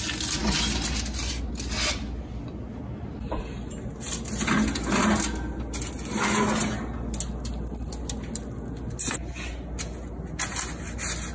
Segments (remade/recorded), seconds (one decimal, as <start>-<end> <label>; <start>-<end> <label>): 0.0-11.3 recorded